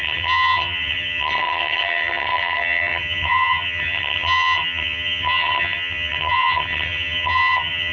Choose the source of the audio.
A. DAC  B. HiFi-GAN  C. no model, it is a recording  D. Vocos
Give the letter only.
B